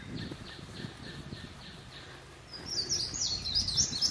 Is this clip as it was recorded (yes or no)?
yes